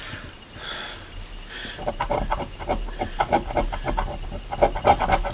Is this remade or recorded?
recorded